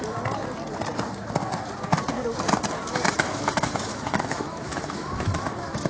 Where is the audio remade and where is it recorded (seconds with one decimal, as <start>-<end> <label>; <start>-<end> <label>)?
0.0-2.9 recorded; 2.9-5.9 remade